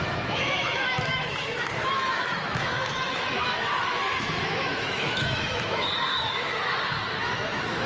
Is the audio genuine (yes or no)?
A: no